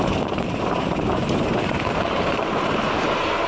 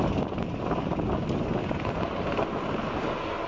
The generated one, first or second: first